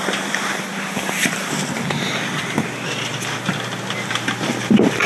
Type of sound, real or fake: fake